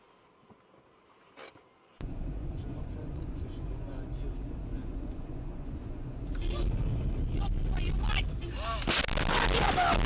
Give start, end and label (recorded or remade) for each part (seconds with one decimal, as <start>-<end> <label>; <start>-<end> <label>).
0.0-1.8 recorded; 1.8-4.1 remade; 4.1-4.7 recorded; 4.7-6.2 remade; 6.2-10.1 recorded